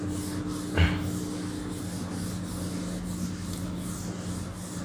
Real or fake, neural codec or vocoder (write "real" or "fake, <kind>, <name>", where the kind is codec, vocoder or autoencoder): real